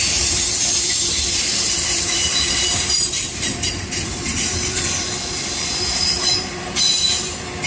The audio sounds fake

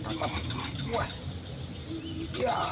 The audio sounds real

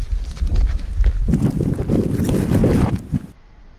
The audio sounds real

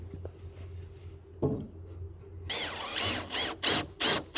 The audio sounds real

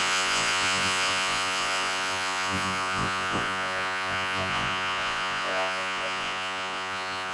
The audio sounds fake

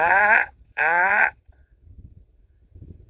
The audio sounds fake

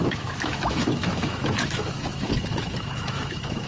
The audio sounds fake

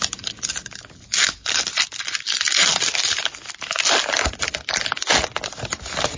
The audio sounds real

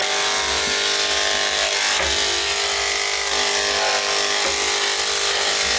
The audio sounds real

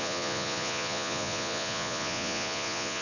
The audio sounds fake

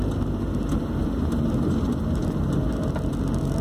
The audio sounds real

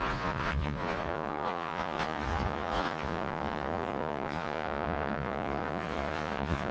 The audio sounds fake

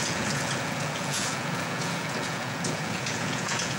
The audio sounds fake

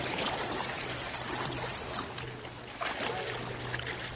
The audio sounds real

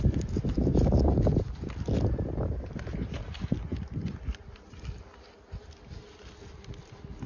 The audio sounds real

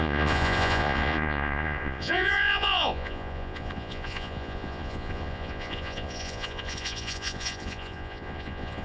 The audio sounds fake